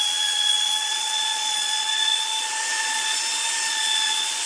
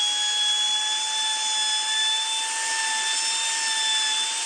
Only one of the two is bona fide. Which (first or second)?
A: second